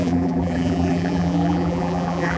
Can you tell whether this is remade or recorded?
remade